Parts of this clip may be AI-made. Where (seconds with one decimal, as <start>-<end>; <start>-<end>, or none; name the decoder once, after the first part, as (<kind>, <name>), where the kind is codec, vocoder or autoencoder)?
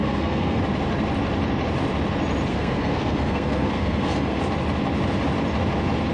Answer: 0.0-0.6 (codec, SNAC); 2.5-4.4